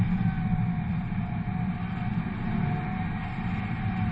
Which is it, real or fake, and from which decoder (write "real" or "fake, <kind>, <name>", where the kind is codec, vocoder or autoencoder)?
real